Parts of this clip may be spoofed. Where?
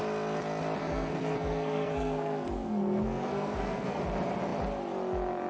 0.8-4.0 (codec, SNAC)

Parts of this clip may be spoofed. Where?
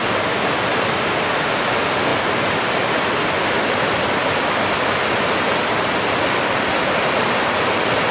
none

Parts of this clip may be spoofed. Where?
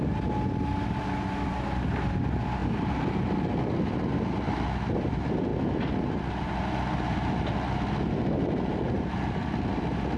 none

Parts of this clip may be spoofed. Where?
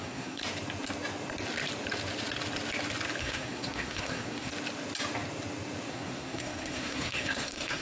0.0-0.4 (codec, SNAC); 3.2-4.5; 5.9-7.8